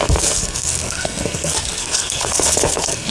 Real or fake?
fake